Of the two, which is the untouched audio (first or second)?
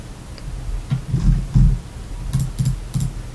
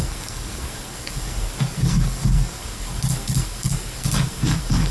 first